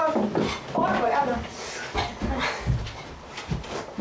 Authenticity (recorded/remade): recorded